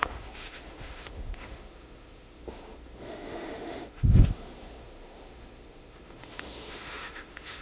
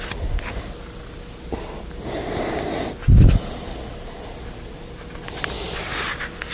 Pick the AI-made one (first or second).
first